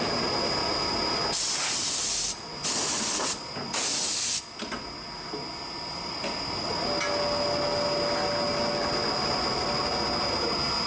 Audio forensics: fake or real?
real